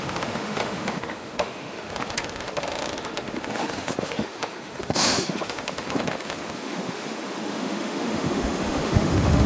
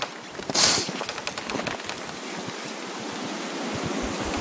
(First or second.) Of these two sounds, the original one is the second